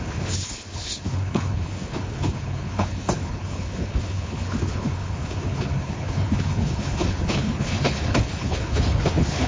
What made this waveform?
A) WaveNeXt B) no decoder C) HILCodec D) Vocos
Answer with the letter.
C